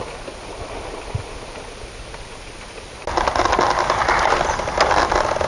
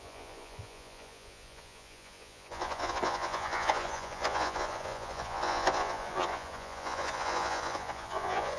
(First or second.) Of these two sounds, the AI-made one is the second